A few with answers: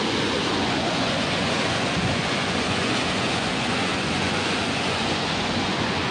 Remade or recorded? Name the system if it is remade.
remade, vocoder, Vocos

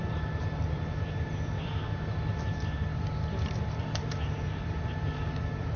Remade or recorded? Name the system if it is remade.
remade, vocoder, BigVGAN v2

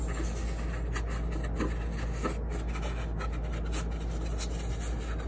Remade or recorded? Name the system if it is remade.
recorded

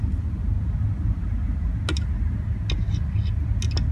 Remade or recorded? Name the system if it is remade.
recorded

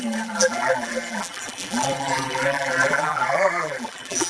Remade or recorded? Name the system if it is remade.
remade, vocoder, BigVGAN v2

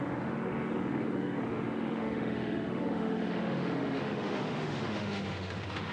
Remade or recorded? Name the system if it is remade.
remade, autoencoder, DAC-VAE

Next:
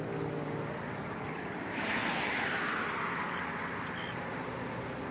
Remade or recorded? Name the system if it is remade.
recorded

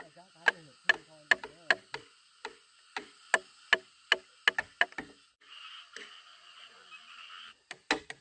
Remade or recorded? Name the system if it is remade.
recorded